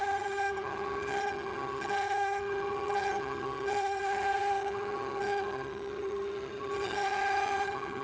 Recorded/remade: remade